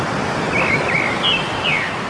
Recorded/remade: recorded